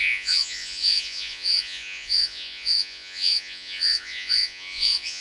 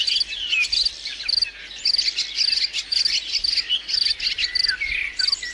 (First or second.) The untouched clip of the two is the second